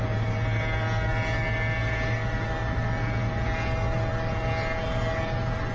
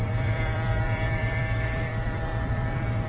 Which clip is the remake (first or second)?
second